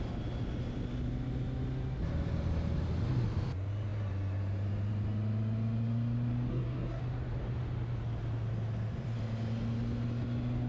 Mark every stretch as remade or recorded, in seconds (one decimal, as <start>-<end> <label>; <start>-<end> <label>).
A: 0.0-6.5 recorded; 6.5-7.0 remade; 7.0-10.7 recorded

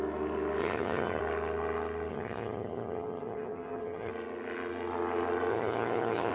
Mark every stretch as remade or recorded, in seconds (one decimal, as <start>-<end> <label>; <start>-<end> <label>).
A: 0.0-0.6 recorded; 0.6-1.2 remade; 1.2-2.1 recorded; 2.1-4.1 remade; 4.1-5.5 recorded; 5.5-6.3 remade

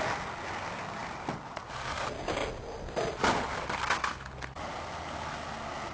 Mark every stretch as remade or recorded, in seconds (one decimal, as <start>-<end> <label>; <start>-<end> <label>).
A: 0.0-5.9 recorded

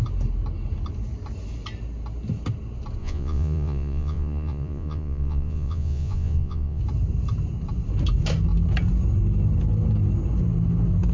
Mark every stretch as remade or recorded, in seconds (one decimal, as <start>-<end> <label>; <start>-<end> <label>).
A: 0.0-3.0 recorded; 3.0-6.8 remade; 6.8-11.1 recorded

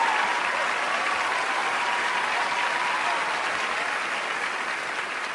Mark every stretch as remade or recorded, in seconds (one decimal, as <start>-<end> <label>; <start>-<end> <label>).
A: 0.0-5.3 recorded